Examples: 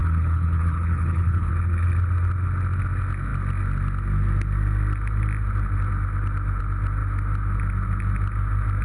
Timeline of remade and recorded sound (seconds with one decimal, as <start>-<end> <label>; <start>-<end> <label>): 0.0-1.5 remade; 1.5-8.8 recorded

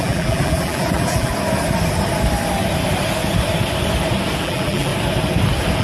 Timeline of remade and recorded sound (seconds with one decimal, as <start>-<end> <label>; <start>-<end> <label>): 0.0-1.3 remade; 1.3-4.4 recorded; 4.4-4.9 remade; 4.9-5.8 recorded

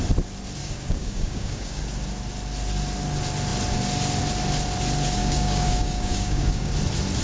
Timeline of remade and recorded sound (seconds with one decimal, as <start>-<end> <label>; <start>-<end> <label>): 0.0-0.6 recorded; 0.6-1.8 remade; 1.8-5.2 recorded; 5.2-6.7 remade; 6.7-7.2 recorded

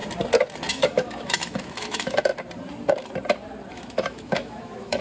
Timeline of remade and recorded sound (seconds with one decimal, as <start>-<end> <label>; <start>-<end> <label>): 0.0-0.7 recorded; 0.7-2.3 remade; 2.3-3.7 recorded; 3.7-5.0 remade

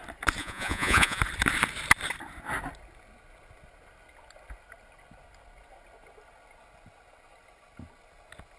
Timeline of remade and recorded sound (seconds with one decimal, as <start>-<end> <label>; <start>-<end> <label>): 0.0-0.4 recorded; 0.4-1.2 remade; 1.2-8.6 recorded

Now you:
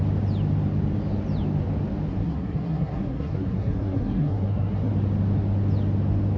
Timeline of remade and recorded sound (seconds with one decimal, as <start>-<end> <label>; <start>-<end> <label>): 0.0-2.1 recorded; 2.1-4.9 remade; 4.9-6.4 recorded

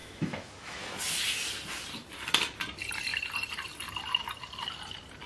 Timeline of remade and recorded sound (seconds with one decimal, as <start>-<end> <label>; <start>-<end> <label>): 0.0-1.0 remade; 1.0-5.3 recorded

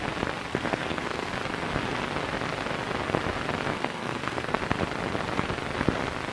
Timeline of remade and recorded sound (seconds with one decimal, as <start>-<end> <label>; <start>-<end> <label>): 0.0-0.5 recorded; 0.5-1.3 remade; 1.3-3.7 recorded; 3.7-4.6 remade; 4.6-6.3 recorded